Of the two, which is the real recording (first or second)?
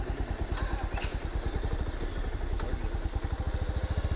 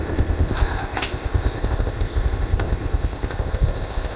first